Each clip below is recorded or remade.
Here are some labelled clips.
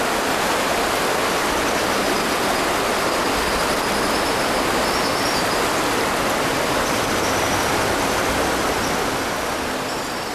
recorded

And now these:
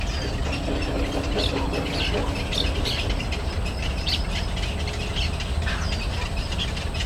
recorded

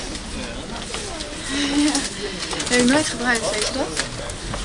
recorded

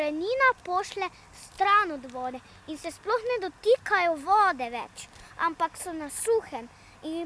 recorded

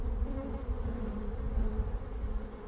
recorded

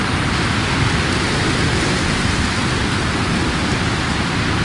recorded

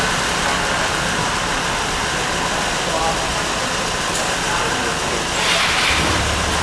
recorded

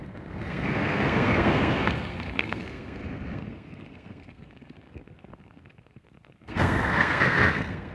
remade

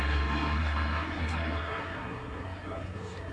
remade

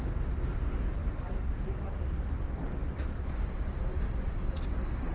recorded